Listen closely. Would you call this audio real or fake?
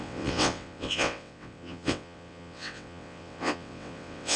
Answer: fake